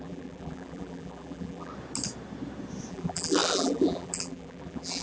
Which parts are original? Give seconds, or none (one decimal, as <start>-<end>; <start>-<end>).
1.7-2.9